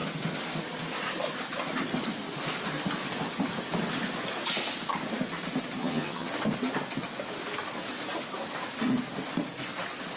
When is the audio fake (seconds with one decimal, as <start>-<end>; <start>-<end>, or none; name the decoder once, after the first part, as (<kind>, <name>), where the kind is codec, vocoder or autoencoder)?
5.8-6.3 (vocoder, HiFi-GAN)